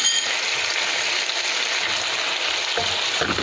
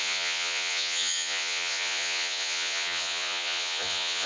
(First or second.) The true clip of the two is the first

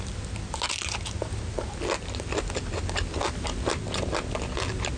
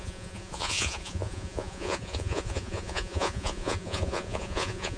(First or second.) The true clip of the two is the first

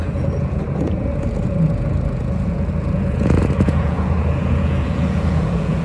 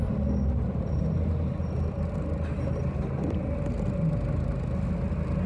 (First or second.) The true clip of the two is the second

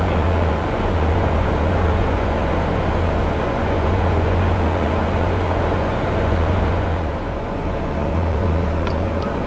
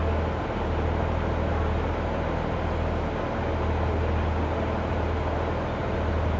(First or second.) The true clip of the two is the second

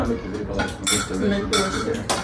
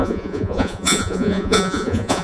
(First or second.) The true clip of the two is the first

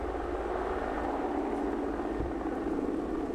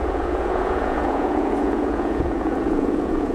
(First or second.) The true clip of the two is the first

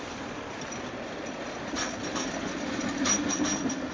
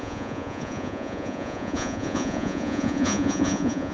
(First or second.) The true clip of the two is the first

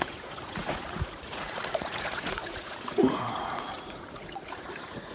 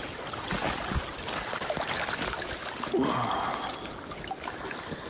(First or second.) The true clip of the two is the second